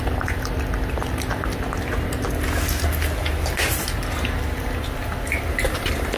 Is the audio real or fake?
real